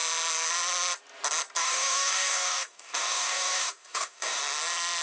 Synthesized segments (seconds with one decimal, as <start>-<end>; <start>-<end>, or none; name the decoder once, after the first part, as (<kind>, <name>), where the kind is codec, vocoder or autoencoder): 1.6-4.4 (codec, DAC)